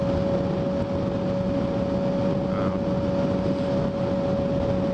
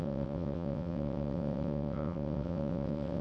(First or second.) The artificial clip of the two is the second